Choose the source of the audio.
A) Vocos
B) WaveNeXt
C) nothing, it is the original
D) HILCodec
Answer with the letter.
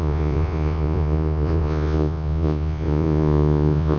A